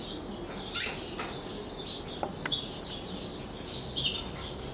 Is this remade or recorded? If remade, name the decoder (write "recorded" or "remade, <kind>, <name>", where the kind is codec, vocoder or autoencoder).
recorded